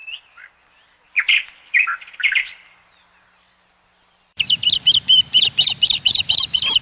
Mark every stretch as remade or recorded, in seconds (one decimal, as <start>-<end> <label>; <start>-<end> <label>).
0.0-1.7 recorded; 1.7-6.8 remade